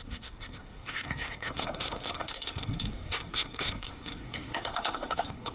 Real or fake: fake